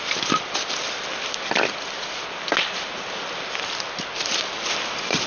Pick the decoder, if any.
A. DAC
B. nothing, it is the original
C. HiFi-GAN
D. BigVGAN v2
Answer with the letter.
B